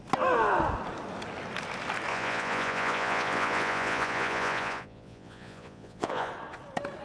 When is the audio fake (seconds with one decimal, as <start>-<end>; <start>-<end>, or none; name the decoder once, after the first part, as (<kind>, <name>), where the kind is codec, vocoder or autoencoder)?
2.1-6.3 (vocoder, Vocos)